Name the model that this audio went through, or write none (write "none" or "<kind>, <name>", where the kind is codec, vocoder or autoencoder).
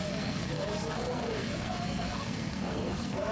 codec, SNAC